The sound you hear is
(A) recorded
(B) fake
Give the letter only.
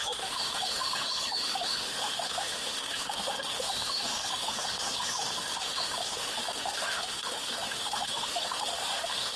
B